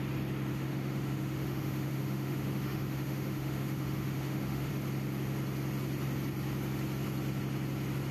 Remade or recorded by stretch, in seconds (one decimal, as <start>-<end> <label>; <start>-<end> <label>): 0.0-0.5 recorded; 0.5-4.7 remade; 4.7-8.1 recorded